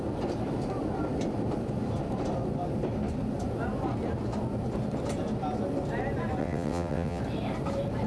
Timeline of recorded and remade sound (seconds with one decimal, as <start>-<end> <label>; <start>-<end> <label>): 0.0-6.4 recorded; 6.4-7.2 remade; 7.2-8.1 recorded

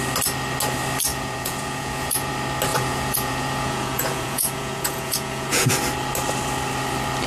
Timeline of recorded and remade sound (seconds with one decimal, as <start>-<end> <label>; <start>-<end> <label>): 0.0-1.1 recorded; 1.1-2.3 remade; 2.3-2.7 recorded; 2.7-5.8 remade; 5.8-7.3 recorded

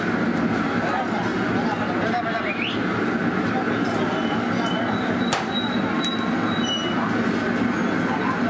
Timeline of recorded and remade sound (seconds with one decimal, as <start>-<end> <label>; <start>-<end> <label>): 0.0-8.5 recorded